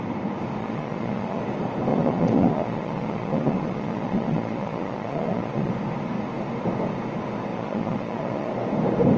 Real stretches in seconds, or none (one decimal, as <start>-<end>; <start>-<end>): 0.0-0.6; 1.4-1.9; 5.7-7.5; 8.5-9.2